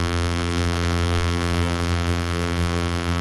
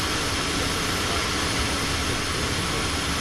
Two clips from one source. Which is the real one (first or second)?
second